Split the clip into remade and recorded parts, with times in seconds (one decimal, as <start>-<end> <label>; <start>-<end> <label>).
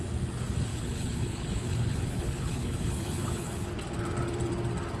0.0-0.7 recorded; 0.7-3.7 remade; 3.7-5.0 recorded